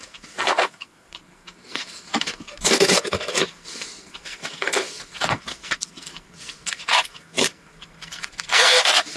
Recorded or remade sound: remade